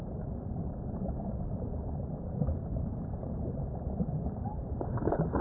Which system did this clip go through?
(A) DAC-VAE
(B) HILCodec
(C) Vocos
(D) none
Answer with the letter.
D